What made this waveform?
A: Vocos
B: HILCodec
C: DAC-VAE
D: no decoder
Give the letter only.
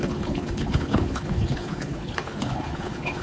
B